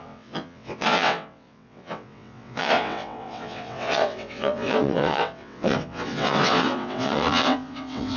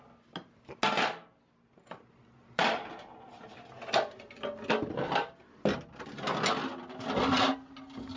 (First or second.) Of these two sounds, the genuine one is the second